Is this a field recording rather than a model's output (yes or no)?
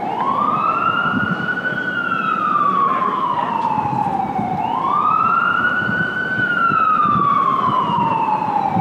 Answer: no